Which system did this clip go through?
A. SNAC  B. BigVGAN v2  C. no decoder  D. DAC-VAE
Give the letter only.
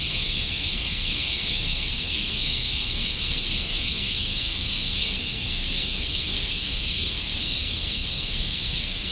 A